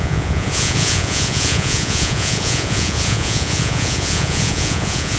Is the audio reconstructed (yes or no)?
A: yes